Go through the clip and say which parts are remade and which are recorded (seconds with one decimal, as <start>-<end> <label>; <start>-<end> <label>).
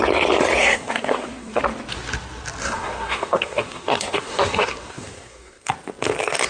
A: 0.0-0.6 recorded; 0.6-1.6 remade; 1.6-2.6 recorded; 2.6-5.7 remade; 5.7-6.5 recorded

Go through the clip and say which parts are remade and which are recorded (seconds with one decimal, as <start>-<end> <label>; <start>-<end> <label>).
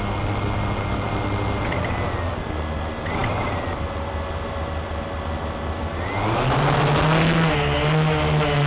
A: 0.0-8.7 recorded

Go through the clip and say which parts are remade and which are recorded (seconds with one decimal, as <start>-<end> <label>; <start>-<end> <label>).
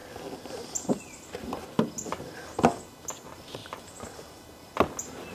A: 0.0-3.1 recorded; 3.1-3.6 remade; 3.6-5.3 recorded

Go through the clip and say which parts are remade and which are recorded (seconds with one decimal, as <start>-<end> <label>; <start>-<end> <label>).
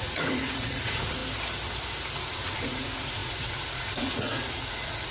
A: 0.0-1.2 remade; 1.2-2.2 recorded; 2.2-5.1 remade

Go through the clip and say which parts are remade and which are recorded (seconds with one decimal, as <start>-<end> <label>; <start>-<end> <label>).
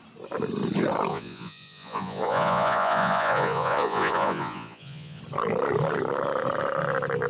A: 0.0-1.1 recorded; 1.1-5.2 remade; 5.2-7.3 recorded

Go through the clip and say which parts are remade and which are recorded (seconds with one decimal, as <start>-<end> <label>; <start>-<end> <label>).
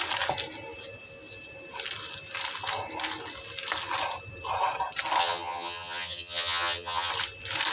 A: 0.0-5.2 recorded; 5.2-7.1 remade; 7.1-7.7 recorded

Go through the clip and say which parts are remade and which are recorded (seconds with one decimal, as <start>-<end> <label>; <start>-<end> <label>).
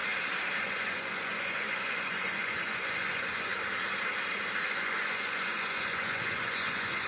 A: 0.0-0.6 recorded; 0.6-3.5 remade; 3.5-4.7 recorded; 4.7-7.1 remade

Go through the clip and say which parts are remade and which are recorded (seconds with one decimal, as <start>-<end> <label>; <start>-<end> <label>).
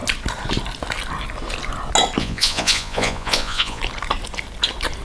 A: 0.0-2.2 recorded; 2.2-3.8 remade; 3.8-5.0 recorded